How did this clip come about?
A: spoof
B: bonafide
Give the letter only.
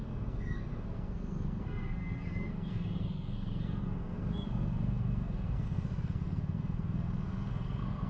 A